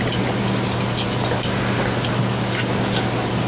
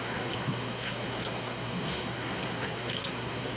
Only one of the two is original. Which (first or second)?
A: first